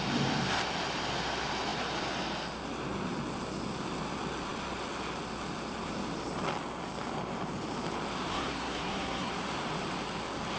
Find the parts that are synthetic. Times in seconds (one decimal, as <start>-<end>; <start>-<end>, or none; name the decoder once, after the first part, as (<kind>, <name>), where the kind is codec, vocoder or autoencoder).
8.3-9.3 (codec, SNAC)

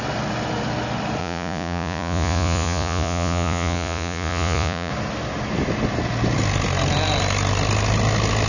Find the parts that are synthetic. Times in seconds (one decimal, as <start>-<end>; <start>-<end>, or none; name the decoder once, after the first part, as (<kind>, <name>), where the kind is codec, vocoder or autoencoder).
1.2-4.9 (vocoder, Vocos)

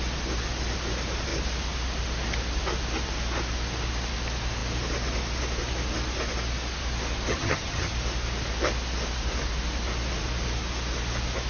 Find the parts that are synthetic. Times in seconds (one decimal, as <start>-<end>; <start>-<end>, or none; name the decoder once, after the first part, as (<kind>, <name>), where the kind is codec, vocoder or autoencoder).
7.3-7.9 (vocoder, HiFi-GAN)

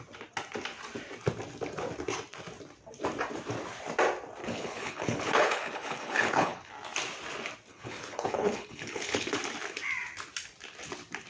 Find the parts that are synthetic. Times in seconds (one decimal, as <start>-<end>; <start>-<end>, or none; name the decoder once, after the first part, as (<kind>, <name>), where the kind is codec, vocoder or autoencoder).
4.4-6.7 (codec, HILCodec); 7.7-9.4